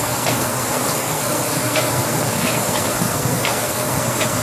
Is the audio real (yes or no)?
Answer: no